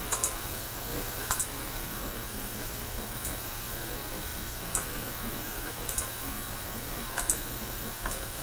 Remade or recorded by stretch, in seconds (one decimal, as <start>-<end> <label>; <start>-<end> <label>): 0.0-8.4 remade